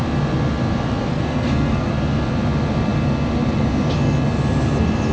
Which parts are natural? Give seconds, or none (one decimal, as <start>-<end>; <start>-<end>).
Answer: 0.0-1.1; 1.9-5.1